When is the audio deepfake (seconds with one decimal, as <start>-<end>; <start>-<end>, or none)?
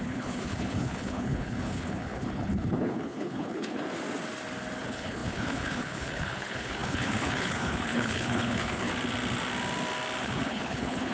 0.0-3.8; 4.8-8.9; 10.2-11.1